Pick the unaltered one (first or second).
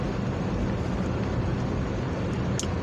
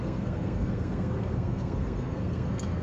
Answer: first